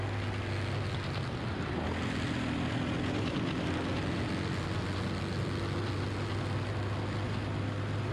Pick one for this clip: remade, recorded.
recorded